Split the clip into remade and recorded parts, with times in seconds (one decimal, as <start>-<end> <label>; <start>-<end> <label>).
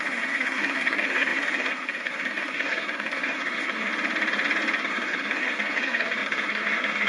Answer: 0.0-3.9 remade; 3.9-4.8 recorded; 4.8-7.1 remade